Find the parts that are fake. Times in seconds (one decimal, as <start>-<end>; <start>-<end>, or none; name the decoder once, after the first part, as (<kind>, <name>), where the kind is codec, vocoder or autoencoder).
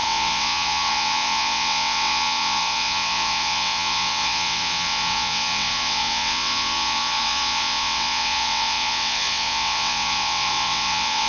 0.0-11.3 (vocoder, WaveNeXt)